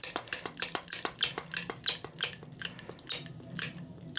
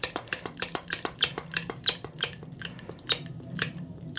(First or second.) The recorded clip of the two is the first